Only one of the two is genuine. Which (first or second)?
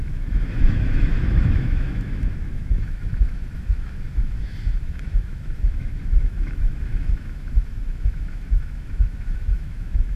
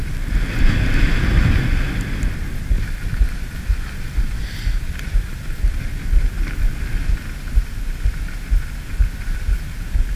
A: second